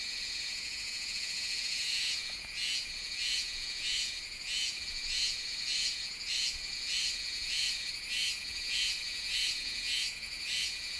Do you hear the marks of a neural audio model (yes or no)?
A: yes